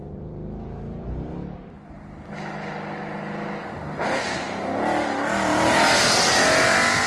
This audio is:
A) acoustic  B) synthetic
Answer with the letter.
A